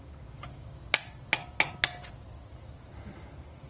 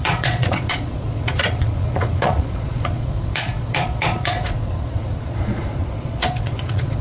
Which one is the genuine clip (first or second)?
first